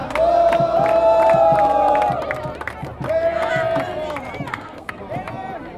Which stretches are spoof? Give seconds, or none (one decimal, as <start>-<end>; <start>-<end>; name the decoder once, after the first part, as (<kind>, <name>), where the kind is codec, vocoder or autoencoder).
4.5-5.0 (codec, SNAC)